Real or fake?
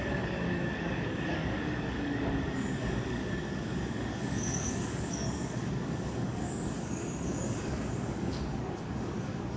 fake